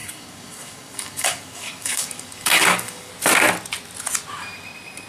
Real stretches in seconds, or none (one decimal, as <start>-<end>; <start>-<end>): 3.1-5.1